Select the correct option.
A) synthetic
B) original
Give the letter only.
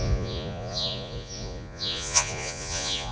A